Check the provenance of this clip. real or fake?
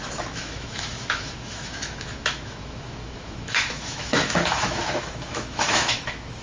fake